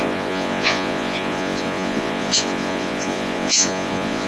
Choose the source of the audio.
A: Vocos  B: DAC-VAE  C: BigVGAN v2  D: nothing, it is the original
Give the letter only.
A